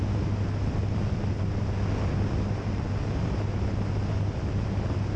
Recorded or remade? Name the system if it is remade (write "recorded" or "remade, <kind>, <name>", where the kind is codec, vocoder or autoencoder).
recorded